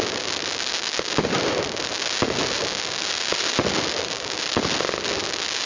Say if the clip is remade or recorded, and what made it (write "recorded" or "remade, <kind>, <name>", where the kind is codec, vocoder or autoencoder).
recorded